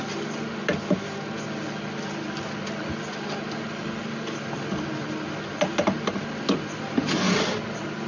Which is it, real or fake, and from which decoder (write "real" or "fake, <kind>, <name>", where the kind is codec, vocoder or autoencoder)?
real